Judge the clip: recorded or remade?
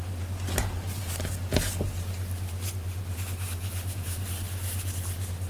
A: remade